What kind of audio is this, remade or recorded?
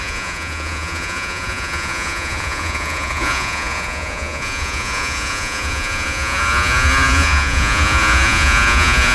remade